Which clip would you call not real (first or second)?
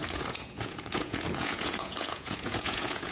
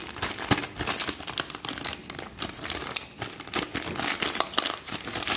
first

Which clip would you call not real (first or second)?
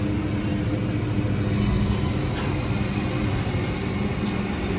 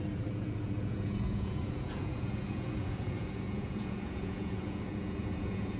second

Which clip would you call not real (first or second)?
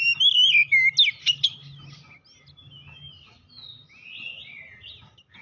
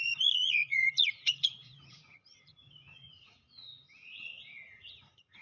second